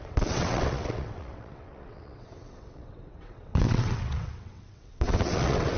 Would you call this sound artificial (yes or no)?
yes